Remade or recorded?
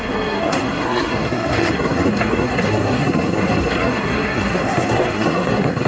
remade